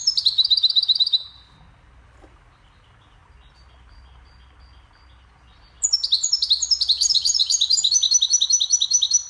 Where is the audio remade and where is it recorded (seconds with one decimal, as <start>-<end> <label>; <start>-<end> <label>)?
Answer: 0.0-9.3 recorded